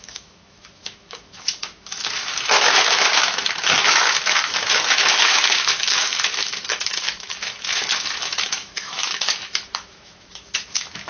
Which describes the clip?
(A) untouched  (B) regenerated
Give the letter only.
B